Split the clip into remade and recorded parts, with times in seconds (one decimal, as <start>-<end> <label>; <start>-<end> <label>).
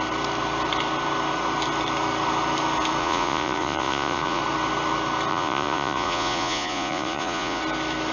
0.0-3.0 recorded; 3.0-4.4 remade; 4.4-5.3 recorded; 5.3-7.6 remade; 7.6-8.1 recorded